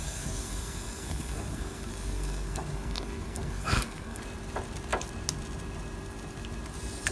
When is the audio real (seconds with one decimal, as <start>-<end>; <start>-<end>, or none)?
4.2-7.1